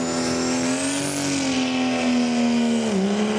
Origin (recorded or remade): recorded